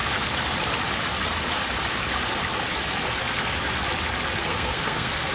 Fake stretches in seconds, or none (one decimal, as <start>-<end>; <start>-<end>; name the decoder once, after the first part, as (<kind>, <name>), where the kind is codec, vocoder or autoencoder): 4.4-5.3 (codec, SNAC)